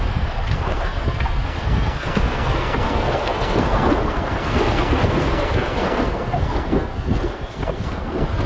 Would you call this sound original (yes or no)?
no